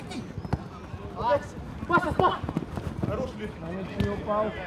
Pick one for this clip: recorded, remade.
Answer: recorded